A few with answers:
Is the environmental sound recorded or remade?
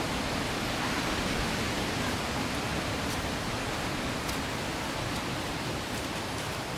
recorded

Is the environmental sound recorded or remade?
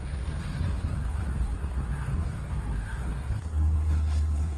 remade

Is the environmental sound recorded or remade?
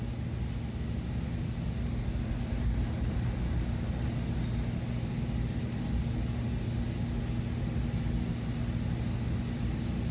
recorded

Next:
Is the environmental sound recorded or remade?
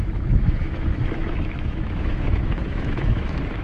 remade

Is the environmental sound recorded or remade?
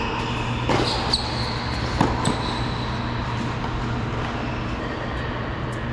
recorded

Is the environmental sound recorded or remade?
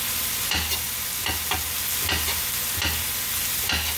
recorded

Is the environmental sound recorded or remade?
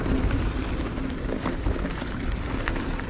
recorded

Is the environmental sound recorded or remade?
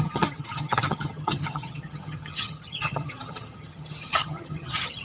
remade